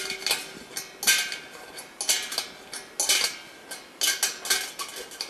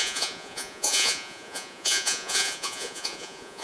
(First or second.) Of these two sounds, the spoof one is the second